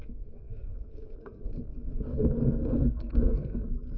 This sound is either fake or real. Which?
fake